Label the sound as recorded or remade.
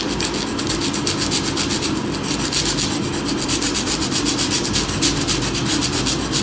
recorded